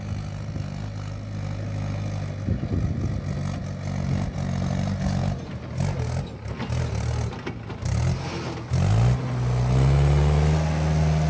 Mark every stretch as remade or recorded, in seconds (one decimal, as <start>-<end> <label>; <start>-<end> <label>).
0.0-11.3 recorded